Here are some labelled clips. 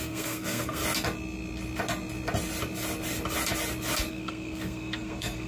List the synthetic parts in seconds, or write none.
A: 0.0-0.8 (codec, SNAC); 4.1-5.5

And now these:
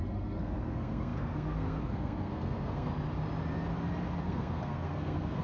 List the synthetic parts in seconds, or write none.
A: 0.0-2.9 (codec, SNAC); 4.2-5.4

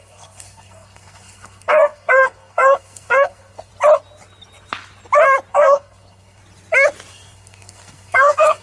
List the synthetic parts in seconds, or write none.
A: 0.0-3.7 (codec, SNAC); 5.5-6.4; 7.1-8.6

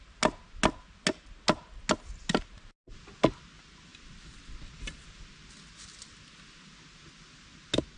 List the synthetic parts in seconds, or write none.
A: none

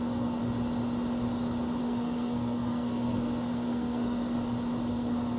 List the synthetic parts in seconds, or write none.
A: 0.0-0.4 (codec, SNAC); 1.8-4.4; 4.9-5.4

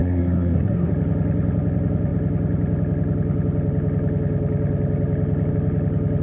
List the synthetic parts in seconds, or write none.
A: 0.0-0.9 (codec, SNAC)